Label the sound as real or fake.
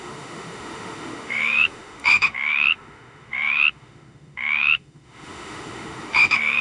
fake